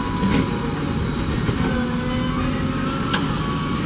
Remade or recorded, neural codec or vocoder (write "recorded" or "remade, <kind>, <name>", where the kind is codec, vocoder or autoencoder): recorded